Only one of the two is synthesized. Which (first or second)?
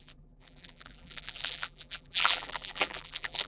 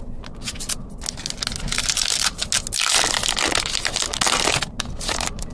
first